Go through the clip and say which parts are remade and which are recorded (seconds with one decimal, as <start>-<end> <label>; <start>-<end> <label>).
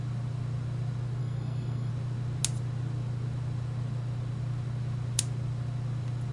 0.0-1.2 recorded; 1.2-1.9 remade; 1.9-6.3 recorded